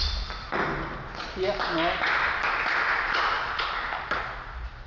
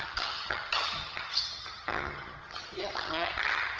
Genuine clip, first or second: first